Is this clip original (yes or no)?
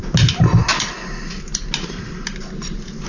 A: yes